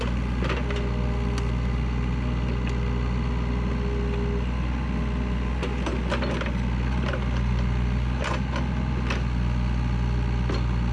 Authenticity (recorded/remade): recorded